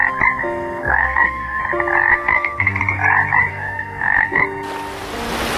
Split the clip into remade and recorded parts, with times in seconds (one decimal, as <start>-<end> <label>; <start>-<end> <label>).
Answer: 0.0-0.8 recorded; 0.8-1.6 remade; 1.6-2.1 recorded; 2.1-2.8 remade; 2.8-3.5 recorded; 3.5-4.4 remade; 4.4-5.6 recorded